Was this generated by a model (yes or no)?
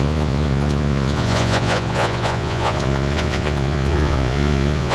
yes